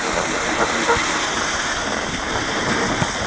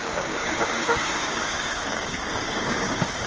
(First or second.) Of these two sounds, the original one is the first